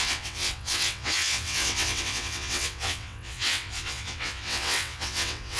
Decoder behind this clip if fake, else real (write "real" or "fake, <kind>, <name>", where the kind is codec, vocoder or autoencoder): fake, vocoder, WaveNeXt